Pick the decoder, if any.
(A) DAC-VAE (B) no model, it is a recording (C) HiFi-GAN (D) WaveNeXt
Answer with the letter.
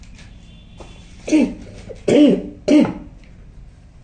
B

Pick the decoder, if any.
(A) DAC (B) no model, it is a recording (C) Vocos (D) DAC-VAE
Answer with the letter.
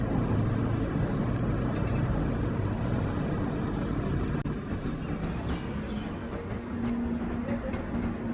B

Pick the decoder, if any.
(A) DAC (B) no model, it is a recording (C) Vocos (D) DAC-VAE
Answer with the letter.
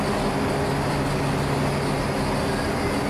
B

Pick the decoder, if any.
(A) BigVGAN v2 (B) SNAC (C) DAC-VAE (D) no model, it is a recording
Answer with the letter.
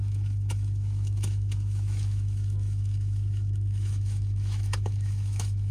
C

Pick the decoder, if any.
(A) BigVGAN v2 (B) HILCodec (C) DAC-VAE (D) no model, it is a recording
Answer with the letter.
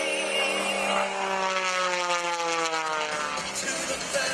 D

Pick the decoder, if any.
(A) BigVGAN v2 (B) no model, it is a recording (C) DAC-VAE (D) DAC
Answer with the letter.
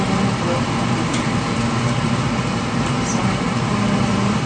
B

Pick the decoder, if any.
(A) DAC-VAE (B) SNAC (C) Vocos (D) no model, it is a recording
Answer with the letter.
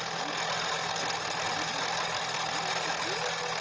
D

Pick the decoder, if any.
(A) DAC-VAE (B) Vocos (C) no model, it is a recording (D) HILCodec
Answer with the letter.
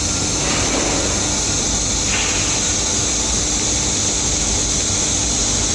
C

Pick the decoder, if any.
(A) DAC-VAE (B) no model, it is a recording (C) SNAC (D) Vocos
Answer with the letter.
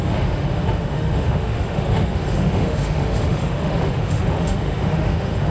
A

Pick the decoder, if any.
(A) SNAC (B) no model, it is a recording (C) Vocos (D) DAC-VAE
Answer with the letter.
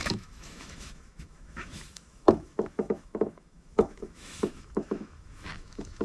D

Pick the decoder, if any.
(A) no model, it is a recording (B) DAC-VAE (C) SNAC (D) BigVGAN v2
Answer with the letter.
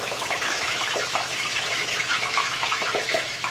B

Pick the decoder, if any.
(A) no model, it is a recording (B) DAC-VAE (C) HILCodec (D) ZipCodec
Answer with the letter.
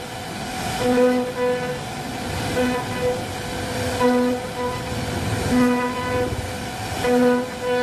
A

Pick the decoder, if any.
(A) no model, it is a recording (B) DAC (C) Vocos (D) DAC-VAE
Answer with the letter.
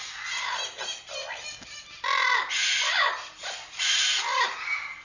A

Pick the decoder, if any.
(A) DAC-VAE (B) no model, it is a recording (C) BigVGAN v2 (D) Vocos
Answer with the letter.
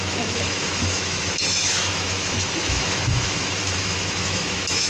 A